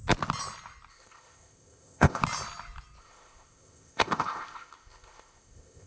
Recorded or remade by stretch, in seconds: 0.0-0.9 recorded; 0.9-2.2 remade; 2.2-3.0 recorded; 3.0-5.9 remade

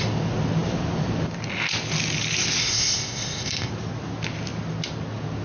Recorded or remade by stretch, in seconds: 0.0-2.6 recorded; 2.6-3.7 remade; 3.7-5.4 recorded

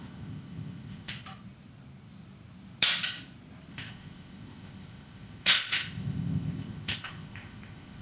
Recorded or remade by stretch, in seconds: 0.0-1.1 remade; 1.1-3.7 recorded; 3.7-8.0 remade

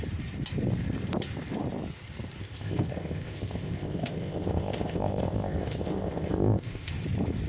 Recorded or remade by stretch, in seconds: 0.0-2.4 recorded; 2.4-6.9 remade; 6.9-7.5 recorded